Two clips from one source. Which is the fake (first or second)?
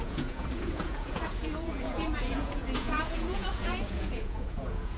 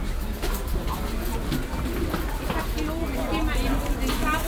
first